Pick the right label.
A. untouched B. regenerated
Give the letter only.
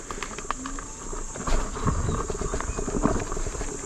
A